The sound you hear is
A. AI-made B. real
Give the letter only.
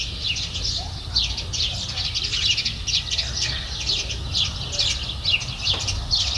B